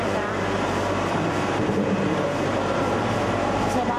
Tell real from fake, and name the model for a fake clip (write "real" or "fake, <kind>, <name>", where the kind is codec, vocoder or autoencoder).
fake, vocoder, BigVGAN v2